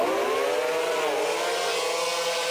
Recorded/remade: recorded